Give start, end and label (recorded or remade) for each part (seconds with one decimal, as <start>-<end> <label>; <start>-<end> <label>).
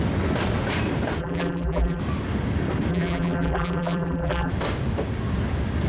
0.0-1.2 recorded; 1.2-2.0 remade; 2.0-2.9 recorded; 2.9-4.5 remade; 4.5-5.9 recorded